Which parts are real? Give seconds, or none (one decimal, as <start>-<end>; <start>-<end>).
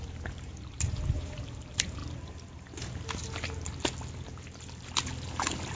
2.0-5.8